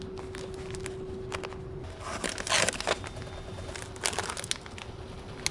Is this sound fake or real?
real